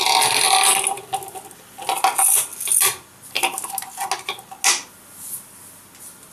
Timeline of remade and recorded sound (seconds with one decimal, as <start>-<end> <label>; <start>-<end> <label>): 0.0-6.3 recorded